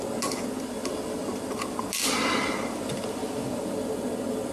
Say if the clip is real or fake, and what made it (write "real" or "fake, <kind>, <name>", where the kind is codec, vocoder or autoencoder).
real